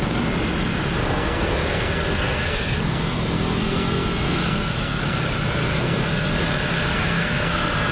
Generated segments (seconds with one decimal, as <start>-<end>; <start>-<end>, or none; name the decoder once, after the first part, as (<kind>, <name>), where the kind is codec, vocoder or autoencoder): 1.0-5.2 (codec, SNAC); 5.7-6.3; 6.9-7.9